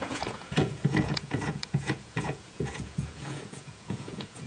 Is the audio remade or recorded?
remade